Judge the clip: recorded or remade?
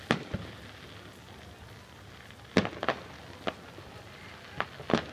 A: recorded